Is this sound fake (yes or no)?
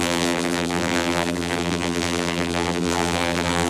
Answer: yes